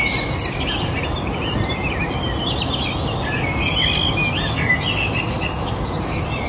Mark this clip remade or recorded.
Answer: recorded